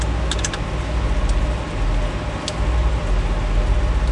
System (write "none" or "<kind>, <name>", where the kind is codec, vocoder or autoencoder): none